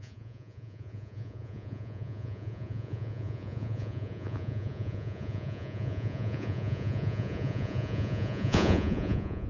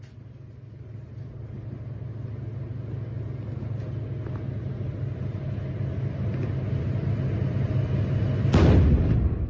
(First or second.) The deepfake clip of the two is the first